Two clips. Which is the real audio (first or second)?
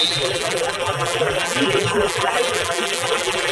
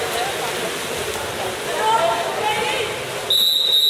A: second